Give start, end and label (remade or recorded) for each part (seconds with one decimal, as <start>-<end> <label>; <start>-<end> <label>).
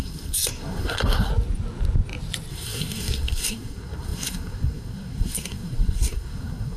0.0-1.3 remade; 1.3-2.5 recorded; 2.5-6.8 remade